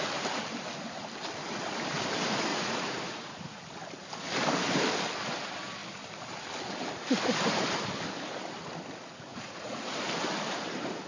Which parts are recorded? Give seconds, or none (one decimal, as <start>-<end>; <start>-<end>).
0.0-2.5; 3.6-9.3; 10.1-11.1